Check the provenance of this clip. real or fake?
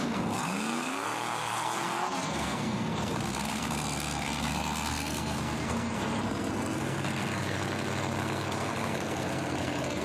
fake